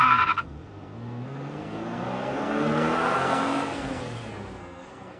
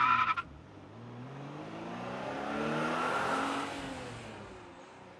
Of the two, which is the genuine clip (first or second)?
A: second